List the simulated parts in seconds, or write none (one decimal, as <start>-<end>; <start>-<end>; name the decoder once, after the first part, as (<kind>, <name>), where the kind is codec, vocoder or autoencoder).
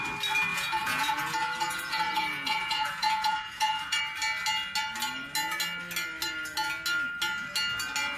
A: 0.5-4.0 (vocoder, Vocos)